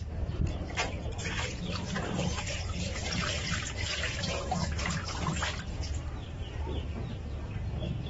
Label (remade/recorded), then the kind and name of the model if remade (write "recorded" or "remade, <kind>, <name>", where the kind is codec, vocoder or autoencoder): remade, vocoder, BigVGAN v2